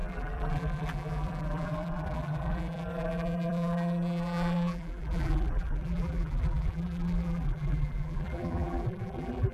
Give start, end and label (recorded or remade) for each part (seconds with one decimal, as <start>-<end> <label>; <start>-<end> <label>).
0.0-9.5 remade